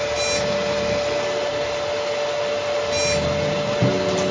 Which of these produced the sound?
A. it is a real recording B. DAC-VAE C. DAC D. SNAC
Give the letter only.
A